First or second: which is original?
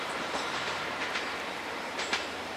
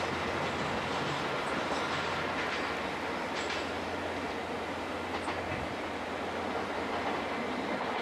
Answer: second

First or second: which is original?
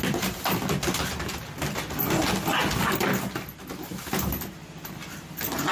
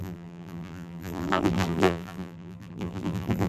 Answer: first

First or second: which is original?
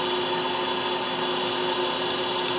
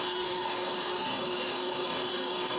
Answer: first